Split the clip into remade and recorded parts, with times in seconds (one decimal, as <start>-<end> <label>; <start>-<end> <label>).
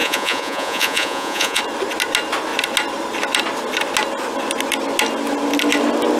0.0-1.6 remade; 1.6-6.2 recorded